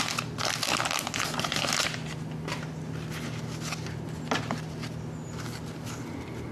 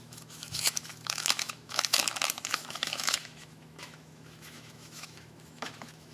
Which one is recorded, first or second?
first